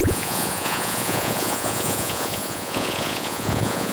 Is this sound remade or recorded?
remade